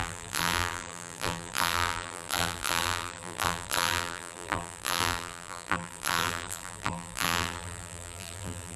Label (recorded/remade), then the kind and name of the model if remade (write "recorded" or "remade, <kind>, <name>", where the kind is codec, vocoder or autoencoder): remade, vocoder, BigVGAN v2